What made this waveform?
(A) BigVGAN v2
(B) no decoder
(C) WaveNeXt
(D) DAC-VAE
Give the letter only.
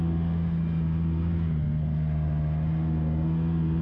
B